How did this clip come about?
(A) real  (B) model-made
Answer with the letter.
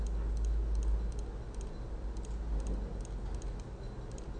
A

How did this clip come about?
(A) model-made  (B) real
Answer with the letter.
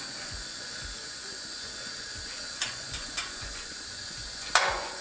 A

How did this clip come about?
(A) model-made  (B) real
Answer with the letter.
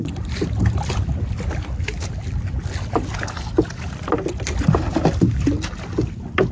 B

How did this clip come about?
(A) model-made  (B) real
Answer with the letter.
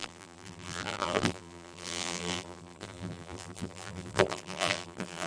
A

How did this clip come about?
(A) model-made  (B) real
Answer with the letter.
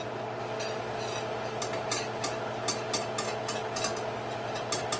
B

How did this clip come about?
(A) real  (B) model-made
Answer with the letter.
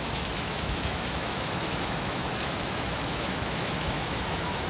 B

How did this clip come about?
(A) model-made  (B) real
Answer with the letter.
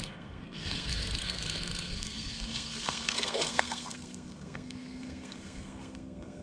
A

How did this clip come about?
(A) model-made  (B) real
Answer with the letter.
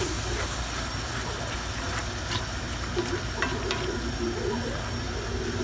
B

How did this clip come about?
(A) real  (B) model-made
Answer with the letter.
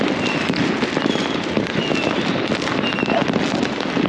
B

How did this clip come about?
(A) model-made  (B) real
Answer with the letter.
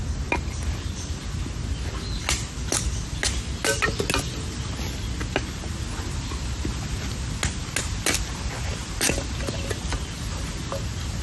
B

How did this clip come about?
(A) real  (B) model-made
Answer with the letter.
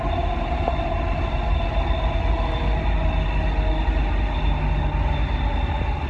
A